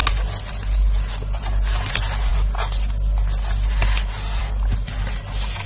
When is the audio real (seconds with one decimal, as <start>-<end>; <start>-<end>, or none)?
0.0-5.7